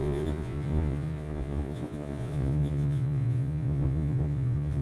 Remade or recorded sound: remade